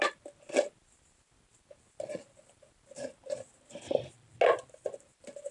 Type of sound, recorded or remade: recorded